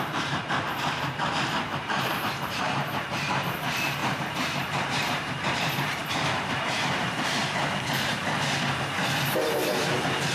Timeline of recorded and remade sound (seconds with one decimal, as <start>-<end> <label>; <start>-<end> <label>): 0.0-7.4 remade; 7.4-10.3 recorded